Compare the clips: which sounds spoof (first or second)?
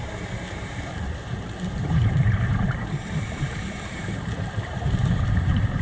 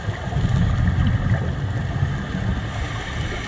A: first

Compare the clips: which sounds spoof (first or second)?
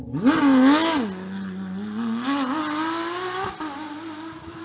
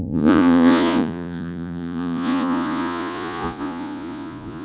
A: second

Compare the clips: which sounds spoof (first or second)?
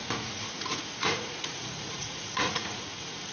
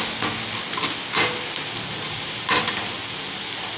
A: first